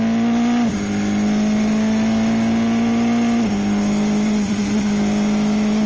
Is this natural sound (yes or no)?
yes